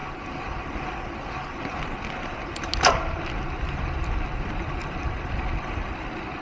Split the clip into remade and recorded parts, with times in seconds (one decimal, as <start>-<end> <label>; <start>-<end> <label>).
0.0-6.4 recorded